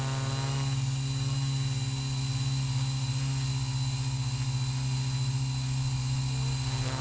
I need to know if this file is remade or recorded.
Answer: recorded